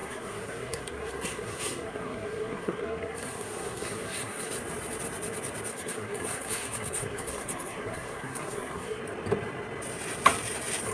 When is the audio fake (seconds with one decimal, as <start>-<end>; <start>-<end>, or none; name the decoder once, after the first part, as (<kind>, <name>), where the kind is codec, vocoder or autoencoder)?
0.0-4.5 (codec, SNAC); 5.7-9.0